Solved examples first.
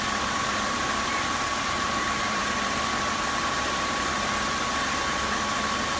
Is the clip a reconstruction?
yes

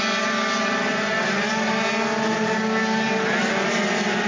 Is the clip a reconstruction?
yes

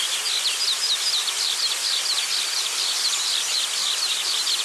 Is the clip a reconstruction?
no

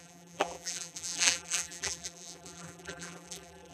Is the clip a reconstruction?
yes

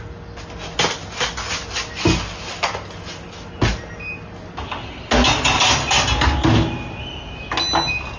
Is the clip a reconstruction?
no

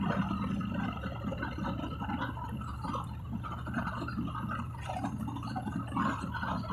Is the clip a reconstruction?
yes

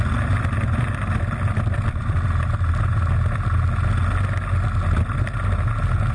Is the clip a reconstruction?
no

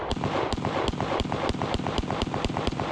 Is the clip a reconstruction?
no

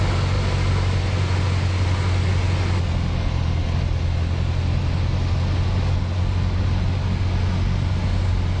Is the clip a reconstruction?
no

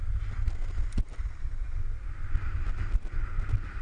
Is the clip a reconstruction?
no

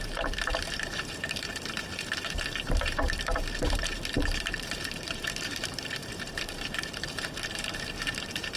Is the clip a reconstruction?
yes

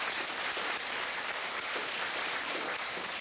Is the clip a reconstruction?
yes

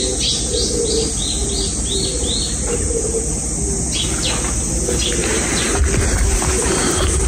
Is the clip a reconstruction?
no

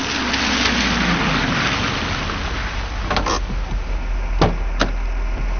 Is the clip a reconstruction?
no